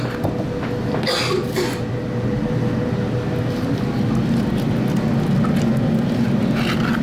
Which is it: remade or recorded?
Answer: recorded